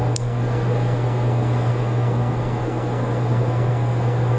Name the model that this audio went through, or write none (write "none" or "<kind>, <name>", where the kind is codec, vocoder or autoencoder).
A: codec, SNAC